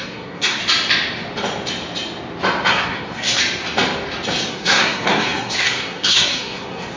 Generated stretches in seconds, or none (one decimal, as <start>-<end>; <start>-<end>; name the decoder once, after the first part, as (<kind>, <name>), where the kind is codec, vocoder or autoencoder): 0.0-0.6 (codec, SNAC); 2.7-3.4; 4.5-7.0